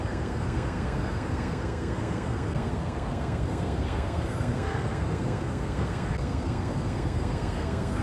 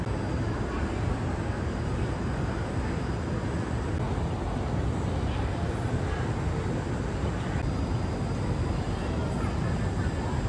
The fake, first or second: first